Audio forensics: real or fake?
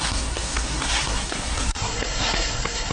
fake